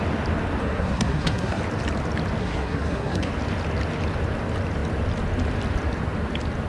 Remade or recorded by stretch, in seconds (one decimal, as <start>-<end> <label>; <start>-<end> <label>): 0.0-0.6 recorded; 0.6-1.6 remade; 1.6-2.4 recorded; 2.4-3.3 remade; 3.3-6.7 recorded